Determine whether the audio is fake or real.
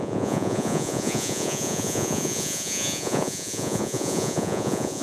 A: fake